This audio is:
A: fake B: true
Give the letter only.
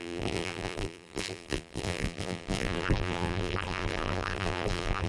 A